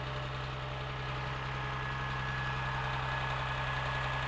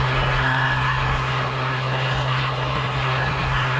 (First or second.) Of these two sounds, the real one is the first